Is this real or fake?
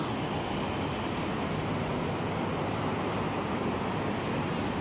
real